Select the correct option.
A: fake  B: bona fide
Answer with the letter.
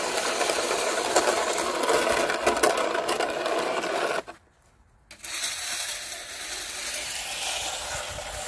B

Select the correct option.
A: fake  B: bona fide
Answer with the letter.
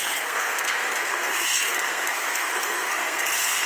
A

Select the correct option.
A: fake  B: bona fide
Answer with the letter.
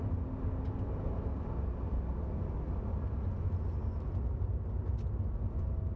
B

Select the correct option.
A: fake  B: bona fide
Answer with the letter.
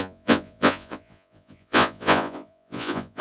A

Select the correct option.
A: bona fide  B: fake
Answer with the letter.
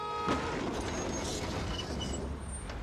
A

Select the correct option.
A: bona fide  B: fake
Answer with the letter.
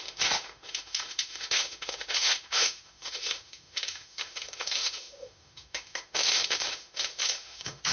B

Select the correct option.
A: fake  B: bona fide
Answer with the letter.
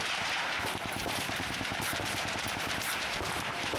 A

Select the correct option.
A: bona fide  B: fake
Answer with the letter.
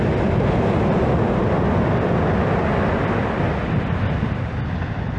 A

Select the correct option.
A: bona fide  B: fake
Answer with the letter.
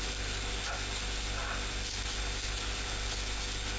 A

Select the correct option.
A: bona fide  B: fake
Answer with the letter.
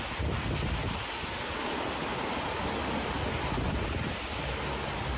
A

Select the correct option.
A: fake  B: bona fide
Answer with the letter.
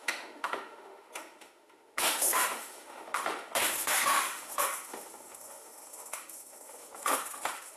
A